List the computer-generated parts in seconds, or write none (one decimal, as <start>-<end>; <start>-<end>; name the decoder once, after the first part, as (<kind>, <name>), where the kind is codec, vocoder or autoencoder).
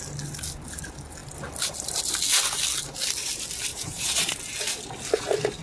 3.7-4.2 (vocoder, Vocos)